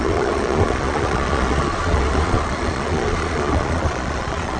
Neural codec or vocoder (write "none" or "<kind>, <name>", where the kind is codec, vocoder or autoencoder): vocoder, Vocos